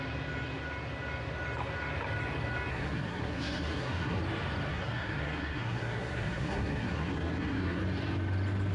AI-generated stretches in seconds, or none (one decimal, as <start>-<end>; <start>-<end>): 2.7-4.2; 4.7-7.8